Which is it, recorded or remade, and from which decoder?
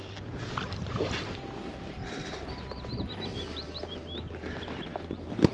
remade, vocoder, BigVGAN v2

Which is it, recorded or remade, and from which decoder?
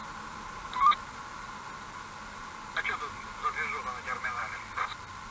recorded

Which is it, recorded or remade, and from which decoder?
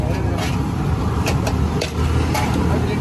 recorded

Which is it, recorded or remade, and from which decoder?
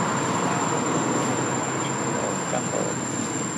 recorded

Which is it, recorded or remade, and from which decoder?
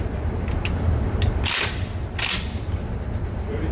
recorded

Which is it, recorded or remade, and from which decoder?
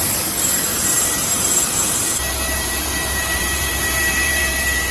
remade, vocoder, BigVGAN v2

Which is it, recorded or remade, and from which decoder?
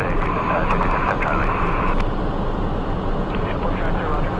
remade, vocoder, BigVGAN v2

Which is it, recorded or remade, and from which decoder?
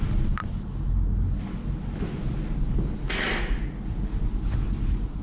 recorded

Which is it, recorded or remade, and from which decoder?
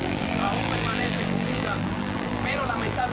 remade, vocoder, BigVGAN v2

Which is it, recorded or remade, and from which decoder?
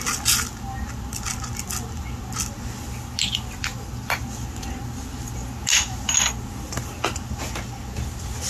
recorded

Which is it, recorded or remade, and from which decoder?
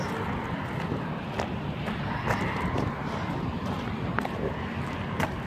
recorded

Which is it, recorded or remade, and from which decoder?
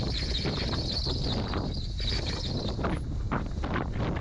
recorded